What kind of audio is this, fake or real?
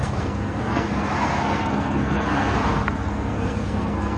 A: fake